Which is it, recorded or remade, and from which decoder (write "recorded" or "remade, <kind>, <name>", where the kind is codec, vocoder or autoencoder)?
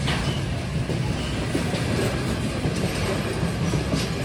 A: recorded